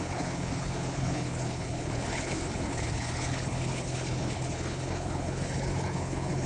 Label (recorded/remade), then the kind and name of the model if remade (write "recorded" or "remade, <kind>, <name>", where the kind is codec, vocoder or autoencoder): remade, codec, HILCodec